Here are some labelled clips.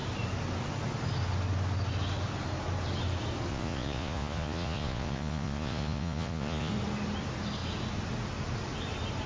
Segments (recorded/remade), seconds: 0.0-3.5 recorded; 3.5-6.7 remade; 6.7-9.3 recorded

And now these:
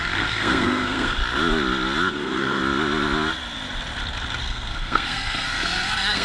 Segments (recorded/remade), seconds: 0.0-1.2 remade; 1.2-2.1 recorded; 2.1-2.6 remade; 2.6-4.4 recorded; 4.4-6.2 remade

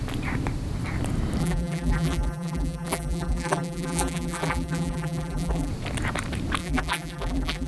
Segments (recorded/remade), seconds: 0.0-1.4 recorded; 1.4-5.7 remade; 5.7-6.6 recorded; 6.6-7.7 remade

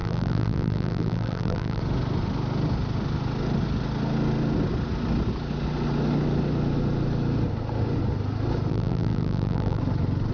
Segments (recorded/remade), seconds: 0.0-1.8 remade; 1.8-8.7 recorded; 8.7-9.8 remade; 9.8-10.3 recorded

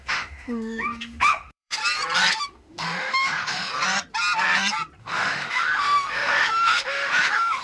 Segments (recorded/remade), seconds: 0.0-1.8 remade; 1.8-2.3 recorded; 2.3-3.7 remade; 3.7-5.0 recorded; 5.0-7.6 remade

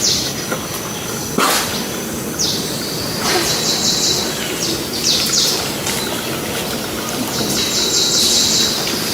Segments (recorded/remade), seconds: 0.0-9.1 recorded